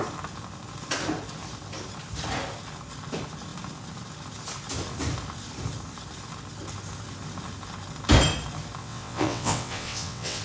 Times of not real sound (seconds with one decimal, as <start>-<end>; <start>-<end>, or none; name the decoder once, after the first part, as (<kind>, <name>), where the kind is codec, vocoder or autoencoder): 8.8-10.4 (vocoder, WaveNeXt)